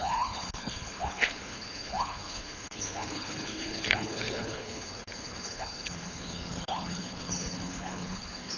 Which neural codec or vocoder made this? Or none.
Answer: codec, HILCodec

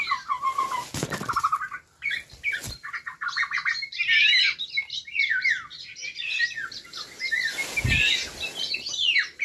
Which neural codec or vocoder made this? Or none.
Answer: none